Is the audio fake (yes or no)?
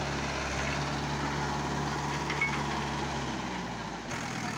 no